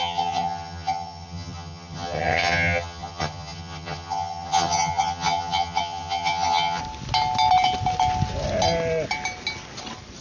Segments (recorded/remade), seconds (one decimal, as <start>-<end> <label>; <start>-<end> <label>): 0.0-6.8 remade; 6.8-10.2 recorded